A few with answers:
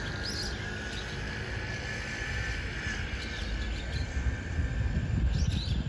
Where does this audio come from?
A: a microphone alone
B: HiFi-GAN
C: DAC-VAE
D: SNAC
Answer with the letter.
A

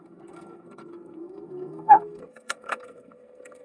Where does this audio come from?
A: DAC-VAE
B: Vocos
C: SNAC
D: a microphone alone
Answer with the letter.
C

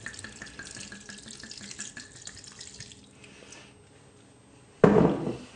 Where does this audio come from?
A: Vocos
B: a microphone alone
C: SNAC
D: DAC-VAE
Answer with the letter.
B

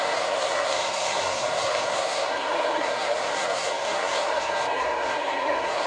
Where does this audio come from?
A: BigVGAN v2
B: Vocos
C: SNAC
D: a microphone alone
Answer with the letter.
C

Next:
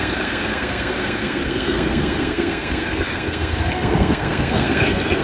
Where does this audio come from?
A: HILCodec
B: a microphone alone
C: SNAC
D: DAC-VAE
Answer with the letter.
C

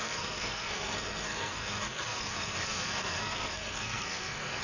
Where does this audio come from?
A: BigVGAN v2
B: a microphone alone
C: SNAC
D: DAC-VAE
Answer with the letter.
C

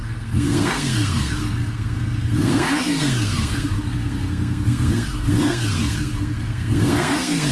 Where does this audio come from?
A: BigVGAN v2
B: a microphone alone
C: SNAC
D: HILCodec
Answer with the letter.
C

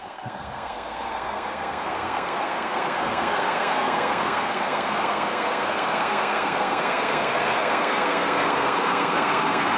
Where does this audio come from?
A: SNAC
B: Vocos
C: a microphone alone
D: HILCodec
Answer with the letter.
A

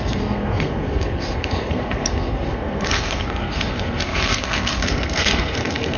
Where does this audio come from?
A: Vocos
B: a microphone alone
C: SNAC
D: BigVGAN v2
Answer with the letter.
C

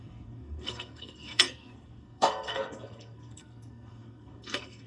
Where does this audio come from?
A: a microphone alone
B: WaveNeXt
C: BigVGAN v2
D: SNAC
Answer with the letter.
D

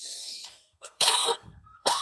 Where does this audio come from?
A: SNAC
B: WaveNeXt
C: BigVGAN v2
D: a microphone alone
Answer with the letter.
A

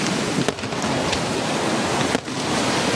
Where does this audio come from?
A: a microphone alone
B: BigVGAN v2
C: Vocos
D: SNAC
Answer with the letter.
A